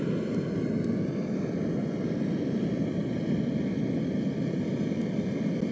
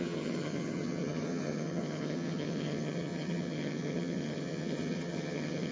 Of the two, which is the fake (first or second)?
second